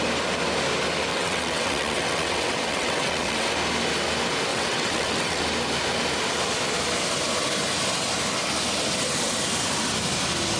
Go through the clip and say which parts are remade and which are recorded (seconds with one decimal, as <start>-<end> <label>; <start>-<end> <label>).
0.0-1.1 recorded; 1.1-3.5 remade; 3.5-4.5 recorded; 4.5-5.4 remade; 5.4-10.6 recorded